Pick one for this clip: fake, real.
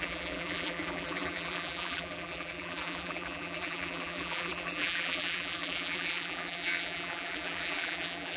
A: fake